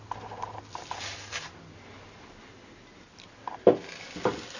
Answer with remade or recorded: recorded